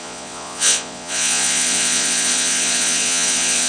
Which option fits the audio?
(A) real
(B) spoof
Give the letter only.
B